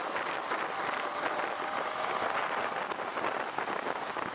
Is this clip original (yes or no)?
yes